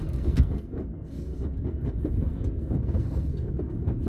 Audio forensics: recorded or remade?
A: remade